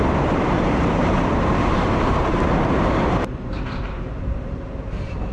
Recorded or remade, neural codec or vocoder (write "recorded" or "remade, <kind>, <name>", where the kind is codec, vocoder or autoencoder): remade, vocoder, BigVGAN v2